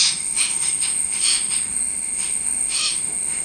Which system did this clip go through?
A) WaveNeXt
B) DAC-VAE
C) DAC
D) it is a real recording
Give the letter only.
B